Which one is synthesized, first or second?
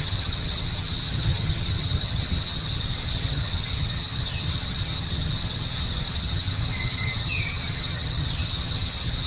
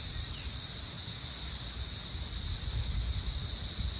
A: first